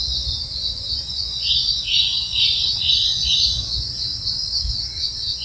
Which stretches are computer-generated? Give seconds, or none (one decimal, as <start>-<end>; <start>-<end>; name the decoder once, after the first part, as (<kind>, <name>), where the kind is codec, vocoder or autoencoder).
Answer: 0.0-4.1 (vocoder, Vocos); 4.7-5.4